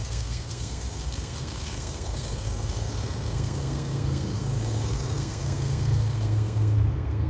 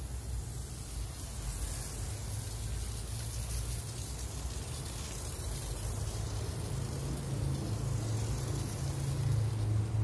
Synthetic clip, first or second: first